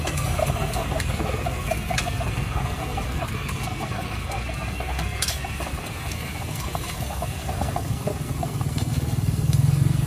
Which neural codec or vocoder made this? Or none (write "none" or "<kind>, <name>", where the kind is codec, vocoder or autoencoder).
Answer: codec, SNAC